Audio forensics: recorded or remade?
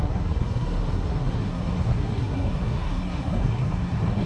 remade